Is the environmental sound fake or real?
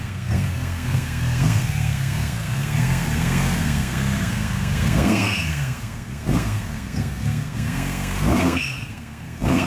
fake